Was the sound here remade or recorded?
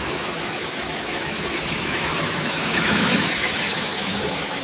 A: remade